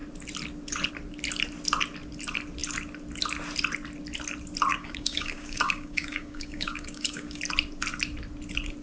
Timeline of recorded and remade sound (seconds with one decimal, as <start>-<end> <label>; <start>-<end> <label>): 0.0-4.7 recorded; 4.7-7.4 remade; 7.4-8.8 recorded